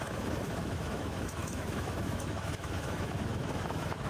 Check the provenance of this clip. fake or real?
fake